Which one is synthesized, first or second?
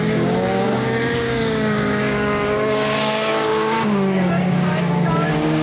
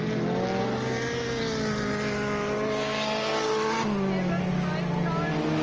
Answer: first